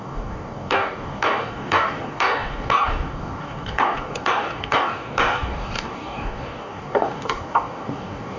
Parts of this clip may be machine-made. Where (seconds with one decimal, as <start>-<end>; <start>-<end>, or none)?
0.0-8.4

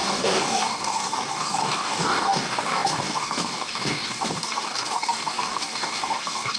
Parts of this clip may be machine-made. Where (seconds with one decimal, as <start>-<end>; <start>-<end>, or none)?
0.0-6.6

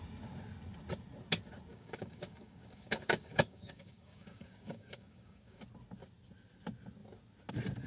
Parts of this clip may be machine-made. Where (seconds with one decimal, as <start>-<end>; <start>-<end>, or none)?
1.7-5.6